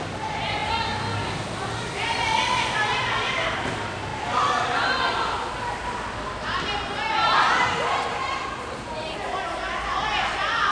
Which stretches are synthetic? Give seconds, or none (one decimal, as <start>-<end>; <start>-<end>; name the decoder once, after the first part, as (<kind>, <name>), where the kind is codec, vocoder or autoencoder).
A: 0.0-0.6 (vocoder, BigVGAN v2); 1.3-4.1; 5.8-10.7